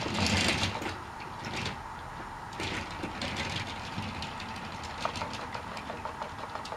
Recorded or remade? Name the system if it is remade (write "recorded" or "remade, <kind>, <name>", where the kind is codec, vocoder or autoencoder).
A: recorded